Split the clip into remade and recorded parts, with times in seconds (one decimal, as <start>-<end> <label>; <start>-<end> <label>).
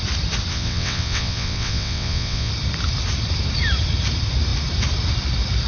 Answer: 0.0-0.5 recorded; 0.5-2.5 remade; 2.5-5.7 recorded